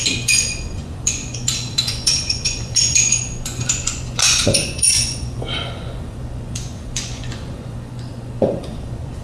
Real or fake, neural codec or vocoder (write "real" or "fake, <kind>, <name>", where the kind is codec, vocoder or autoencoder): fake, vocoder, Vocos